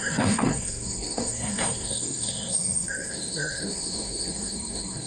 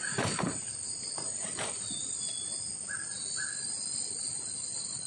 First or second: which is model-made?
first